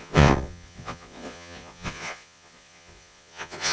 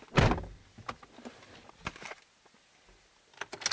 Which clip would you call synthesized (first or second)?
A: first